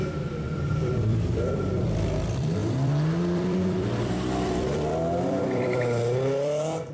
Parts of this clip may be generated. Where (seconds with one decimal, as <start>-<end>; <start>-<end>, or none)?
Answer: 0.0-6.9